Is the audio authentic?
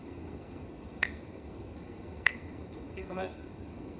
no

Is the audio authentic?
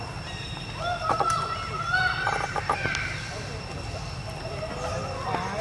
yes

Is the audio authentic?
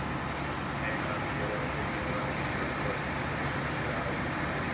yes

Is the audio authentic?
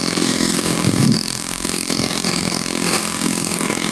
no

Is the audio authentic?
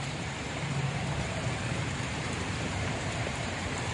no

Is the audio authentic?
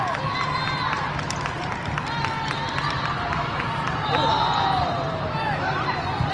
yes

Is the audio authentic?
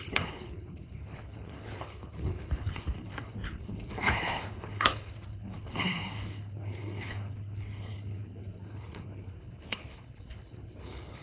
no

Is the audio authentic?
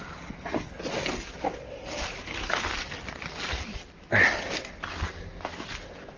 yes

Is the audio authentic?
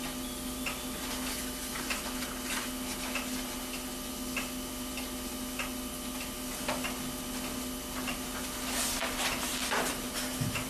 yes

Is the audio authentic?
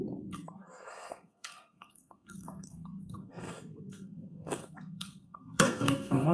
no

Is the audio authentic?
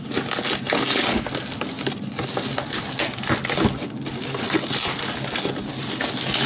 yes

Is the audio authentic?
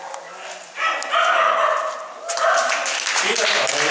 yes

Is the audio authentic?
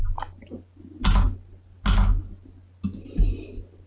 yes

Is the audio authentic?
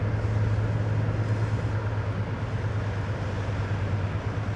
yes